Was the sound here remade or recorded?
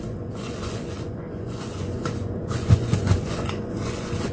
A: remade